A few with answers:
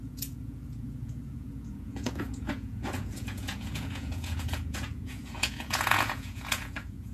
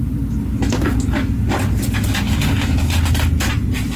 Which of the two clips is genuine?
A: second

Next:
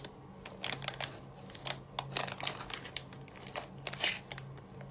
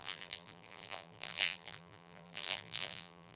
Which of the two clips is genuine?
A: first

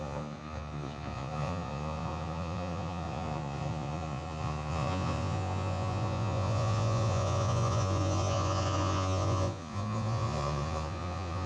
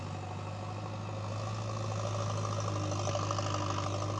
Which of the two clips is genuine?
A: second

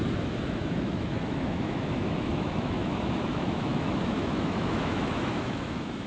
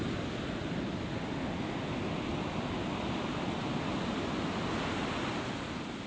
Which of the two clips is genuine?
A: second